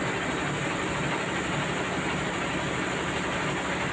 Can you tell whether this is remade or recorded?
recorded